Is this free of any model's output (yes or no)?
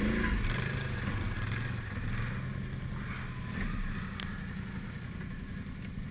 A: yes